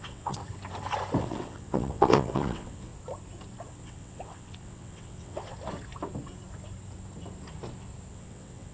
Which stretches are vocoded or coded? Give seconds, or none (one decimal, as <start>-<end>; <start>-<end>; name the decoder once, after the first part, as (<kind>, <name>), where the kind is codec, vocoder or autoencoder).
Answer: 0.0-0.4 (vocoder, WaveNeXt); 1.2-2.9; 3.7-5.5; 8.1-8.7